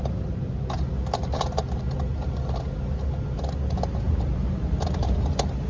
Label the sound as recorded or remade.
recorded